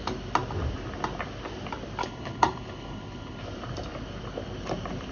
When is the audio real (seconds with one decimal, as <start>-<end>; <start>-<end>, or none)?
0.0-2.0; 3.4-5.1